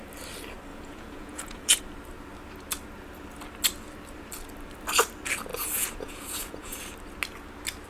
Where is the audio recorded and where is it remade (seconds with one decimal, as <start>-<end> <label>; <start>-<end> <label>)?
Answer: 0.0-0.7 recorded; 0.7-1.8 remade; 1.8-5.5 recorded; 5.5-6.9 remade; 6.9-7.9 recorded